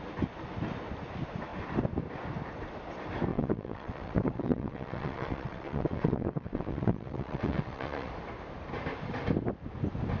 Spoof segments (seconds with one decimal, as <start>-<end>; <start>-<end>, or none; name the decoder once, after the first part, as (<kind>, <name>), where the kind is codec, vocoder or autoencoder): 3.3-8.1 (vocoder, WaveNeXt)